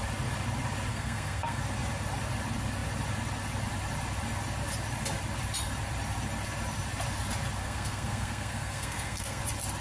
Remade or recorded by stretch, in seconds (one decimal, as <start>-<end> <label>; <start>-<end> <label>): 0.0-0.9 recorded; 0.9-1.6 remade; 1.6-7.6 recorded; 7.6-9.4 remade; 9.4-9.8 recorded